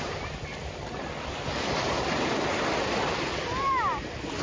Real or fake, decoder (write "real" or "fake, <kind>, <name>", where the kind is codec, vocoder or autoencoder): real